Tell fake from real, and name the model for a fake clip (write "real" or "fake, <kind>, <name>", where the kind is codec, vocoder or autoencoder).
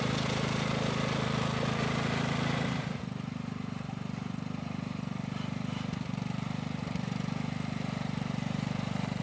fake, vocoder, BigVGAN v2